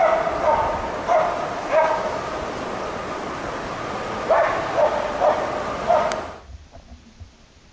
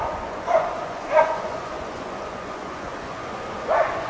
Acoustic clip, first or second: first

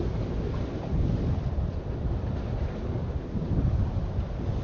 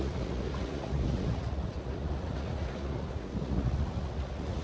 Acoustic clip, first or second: first